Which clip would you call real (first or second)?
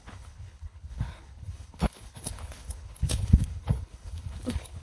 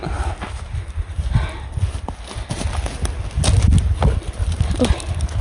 second